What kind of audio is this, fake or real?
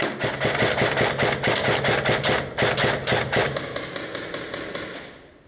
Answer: real